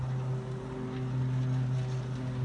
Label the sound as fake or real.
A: real